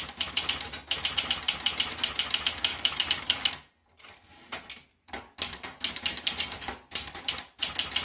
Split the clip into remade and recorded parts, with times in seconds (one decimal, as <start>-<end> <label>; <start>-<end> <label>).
0.0-2.7 recorded; 2.7-3.5 remade; 3.5-4.9 recorded; 4.9-7.3 remade; 7.3-8.0 recorded